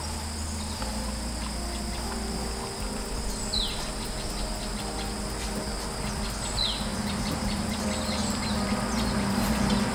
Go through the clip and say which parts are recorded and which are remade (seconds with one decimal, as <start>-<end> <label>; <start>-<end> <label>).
0.0-6.9 recorded; 6.9-7.7 remade; 7.7-9.9 recorded